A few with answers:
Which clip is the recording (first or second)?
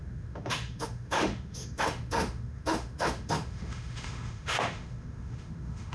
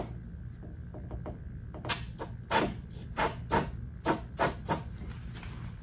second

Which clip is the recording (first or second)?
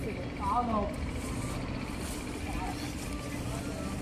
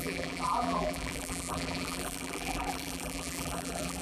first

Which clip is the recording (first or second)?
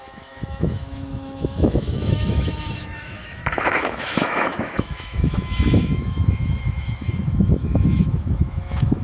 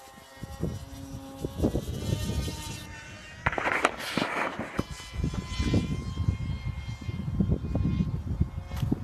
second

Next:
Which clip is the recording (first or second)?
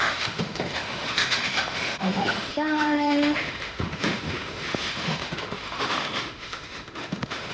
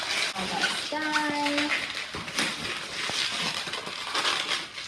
second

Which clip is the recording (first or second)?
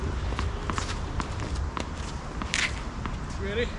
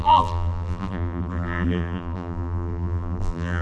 first